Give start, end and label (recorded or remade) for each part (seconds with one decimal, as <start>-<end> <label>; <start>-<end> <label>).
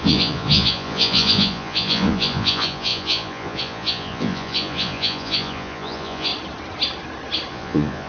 0.0-6.3 remade; 6.3-7.5 recorded; 7.5-8.1 remade